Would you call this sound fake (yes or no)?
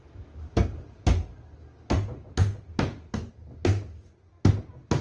no